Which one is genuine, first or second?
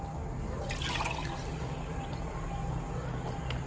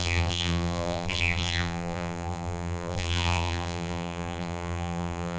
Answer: first